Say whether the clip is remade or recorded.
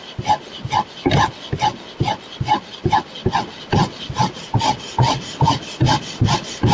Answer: recorded